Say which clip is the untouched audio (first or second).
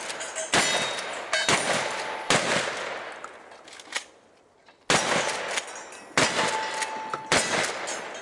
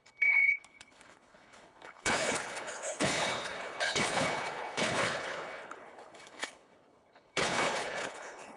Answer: first